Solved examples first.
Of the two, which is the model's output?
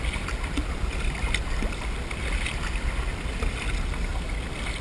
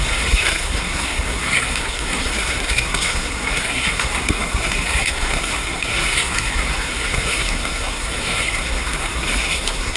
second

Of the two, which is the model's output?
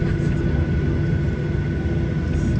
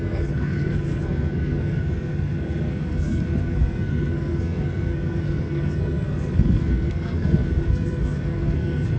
second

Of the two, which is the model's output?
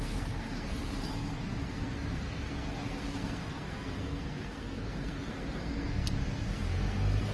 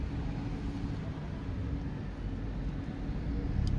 first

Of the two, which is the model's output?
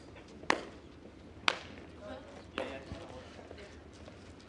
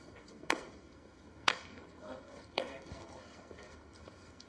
second